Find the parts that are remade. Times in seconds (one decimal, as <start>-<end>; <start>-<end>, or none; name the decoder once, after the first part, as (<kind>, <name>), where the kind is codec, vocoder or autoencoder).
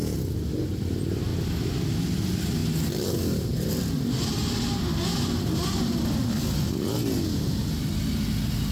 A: none